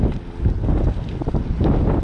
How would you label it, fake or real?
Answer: real